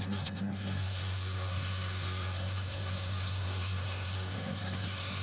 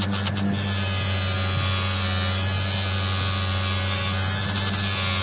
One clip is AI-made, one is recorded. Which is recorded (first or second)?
second